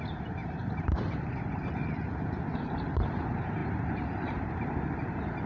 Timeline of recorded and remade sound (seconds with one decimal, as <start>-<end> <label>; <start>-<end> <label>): 0.0-0.4 recorded; 0.4-1.7 remade; 1.7-3.6 recorded; 3.6-5.5 remade